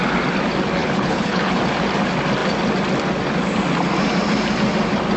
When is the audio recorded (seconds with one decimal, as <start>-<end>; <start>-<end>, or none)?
0.0-0.8; 1.6-5.2